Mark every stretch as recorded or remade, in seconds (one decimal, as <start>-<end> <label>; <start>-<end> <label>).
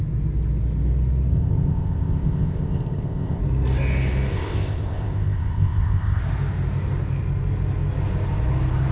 0.0-1.3 recorded; 1.3-3.4 remade; 3.4-4.3 recorded; 4.3-6.2 remade; 6.2-8.9 recorded